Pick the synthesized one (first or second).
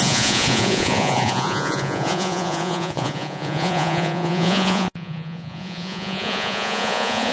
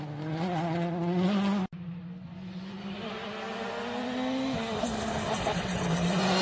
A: first